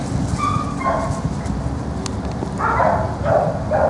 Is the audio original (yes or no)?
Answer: yes